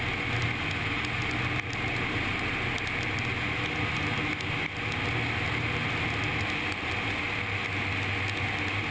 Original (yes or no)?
yes